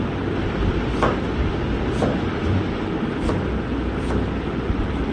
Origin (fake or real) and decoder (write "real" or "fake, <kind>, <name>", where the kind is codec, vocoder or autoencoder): real